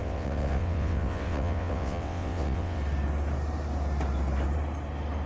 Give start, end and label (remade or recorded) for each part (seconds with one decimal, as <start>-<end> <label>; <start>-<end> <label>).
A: 0.0-2.8 remade; 2.8-5.3 recorded